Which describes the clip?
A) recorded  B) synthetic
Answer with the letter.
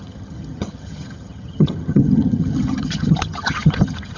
B